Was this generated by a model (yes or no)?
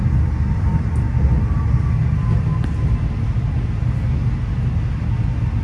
no